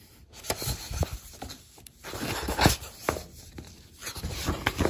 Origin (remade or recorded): recorded